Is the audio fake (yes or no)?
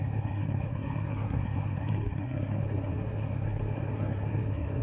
yes